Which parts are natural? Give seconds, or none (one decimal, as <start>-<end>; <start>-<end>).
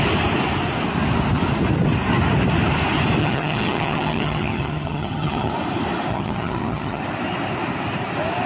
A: 0.0-3.2; 5.5-6.1; 7.0-8.5